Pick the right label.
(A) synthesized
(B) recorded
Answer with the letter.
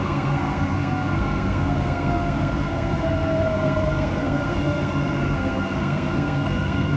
A